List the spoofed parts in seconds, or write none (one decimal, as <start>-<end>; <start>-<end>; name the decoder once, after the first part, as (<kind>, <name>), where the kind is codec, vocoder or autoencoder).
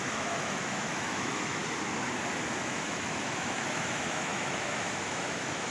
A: 0.0-1.6 (autoencoder, DAC-VAE); 2.6-5.7